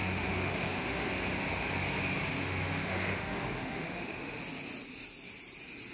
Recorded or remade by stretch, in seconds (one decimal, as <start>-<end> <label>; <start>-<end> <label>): 0.0-1.1 remade; 1.1-2.4 recorded; 2.4-4.4 remade; 4.4-5.9 recorded